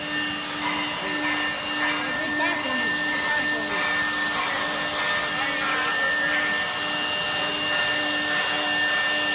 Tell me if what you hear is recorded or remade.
recorded